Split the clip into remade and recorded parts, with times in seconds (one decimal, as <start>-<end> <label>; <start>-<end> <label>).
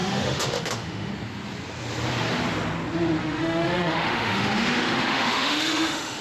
0.0-1.1 remade; 1.1-3.2 recorded; 3.2-6.2 remade